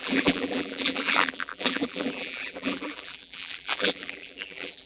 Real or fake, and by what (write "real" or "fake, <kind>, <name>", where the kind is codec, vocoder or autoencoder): fake, vocoder, BigVGAN v2